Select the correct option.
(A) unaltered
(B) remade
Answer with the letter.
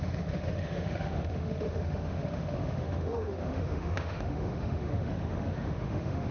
B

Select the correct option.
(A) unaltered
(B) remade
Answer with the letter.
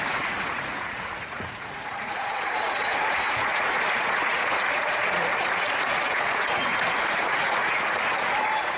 B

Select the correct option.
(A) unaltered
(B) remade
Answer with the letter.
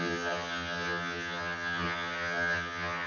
B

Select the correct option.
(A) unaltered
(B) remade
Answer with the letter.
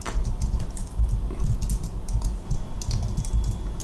A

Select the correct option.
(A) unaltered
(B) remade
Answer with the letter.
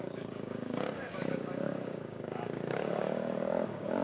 B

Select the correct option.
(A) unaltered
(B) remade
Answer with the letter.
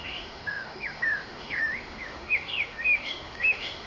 B